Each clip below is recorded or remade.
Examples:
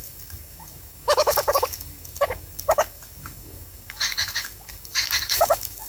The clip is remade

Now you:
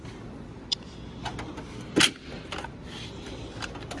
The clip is recorded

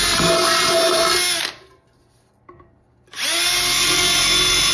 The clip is recorded